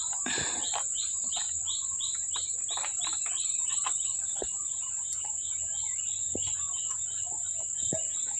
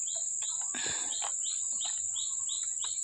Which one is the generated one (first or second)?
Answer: first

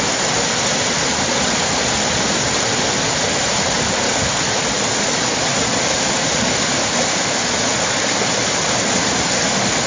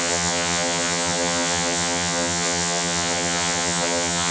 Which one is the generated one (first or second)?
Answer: second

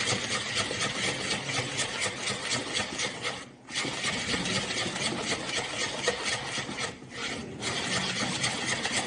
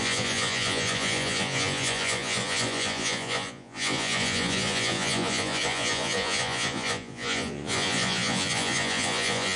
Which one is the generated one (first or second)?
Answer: second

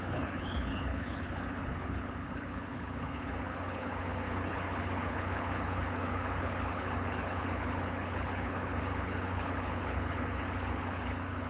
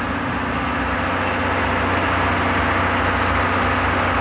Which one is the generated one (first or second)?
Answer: first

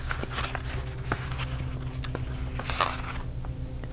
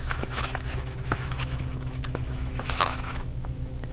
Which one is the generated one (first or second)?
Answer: second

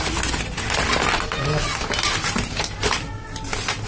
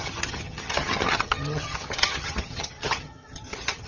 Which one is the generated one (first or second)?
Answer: second